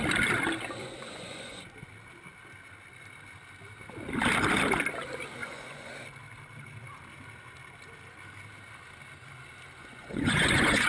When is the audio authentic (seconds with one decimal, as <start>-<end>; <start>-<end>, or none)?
0.0-0.8; 1.6-5.4; 5.9-9.8